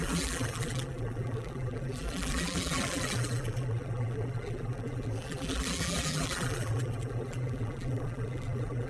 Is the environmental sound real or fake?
fake